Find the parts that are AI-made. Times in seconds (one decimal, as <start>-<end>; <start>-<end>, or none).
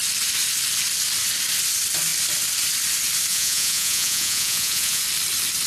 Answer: 3.3-5.0